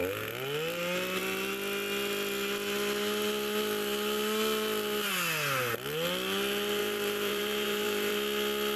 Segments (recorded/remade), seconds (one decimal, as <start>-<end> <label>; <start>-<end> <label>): 0.0-6.8 recorded; 6.8-8.1 remade; 8.1-8.8 recorded